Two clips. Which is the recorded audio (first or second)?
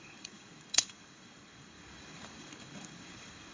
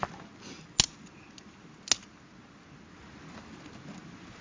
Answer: second